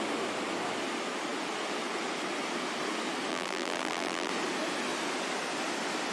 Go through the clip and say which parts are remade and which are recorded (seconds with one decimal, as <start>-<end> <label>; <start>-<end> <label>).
0.0-3.3 recorded; 3.3-4.3 remade; 4.3-6.1 recorded